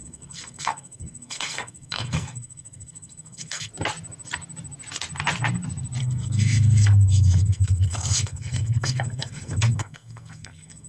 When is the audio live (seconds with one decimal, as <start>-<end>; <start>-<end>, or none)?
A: 3.7-6.0